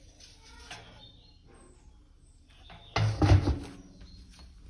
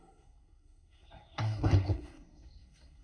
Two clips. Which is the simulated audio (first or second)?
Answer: second